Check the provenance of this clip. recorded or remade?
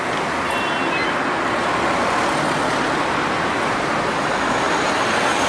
recorded